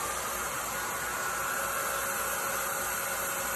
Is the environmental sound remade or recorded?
recorded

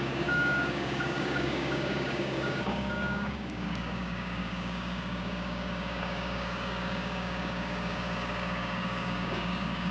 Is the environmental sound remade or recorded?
remade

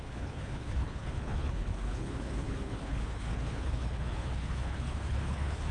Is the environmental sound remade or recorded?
remade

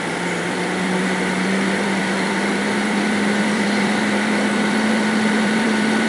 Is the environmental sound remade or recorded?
remade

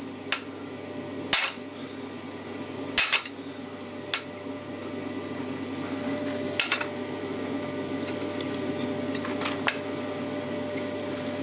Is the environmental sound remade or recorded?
recorded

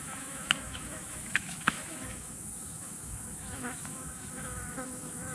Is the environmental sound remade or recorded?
remade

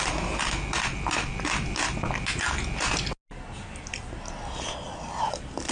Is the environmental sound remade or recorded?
recorded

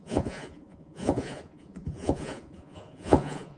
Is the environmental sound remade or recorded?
remade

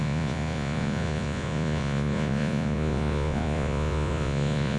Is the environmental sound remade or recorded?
remade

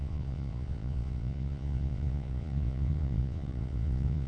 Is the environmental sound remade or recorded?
remade